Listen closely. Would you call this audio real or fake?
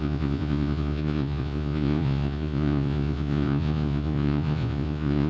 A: fake